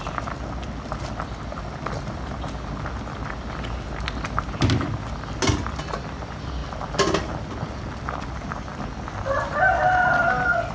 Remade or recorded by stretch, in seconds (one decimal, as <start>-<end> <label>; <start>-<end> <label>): 0.0-10.7 recorded